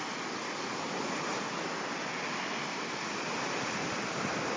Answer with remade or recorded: recorded